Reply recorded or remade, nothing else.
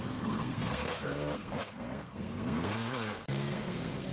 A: remade